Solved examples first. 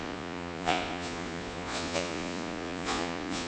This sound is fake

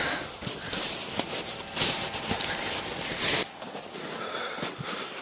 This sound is real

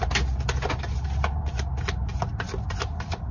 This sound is real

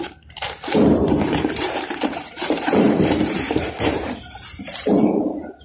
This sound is fake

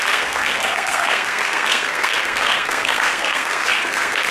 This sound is fake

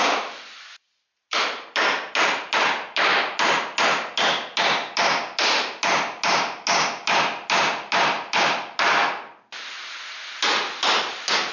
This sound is real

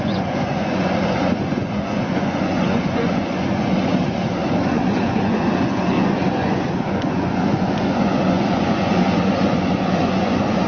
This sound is fake